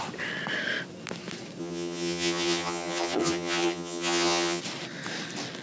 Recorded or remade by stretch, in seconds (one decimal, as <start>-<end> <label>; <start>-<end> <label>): 0.0-1.6 recorded; 1.6-4.6 remade; 4.6-5.6 recorded